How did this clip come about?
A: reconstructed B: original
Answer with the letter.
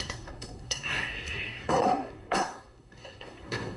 A